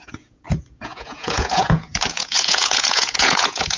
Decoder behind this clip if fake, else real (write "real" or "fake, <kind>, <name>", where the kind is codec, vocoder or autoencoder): fake, vocoder, Vocos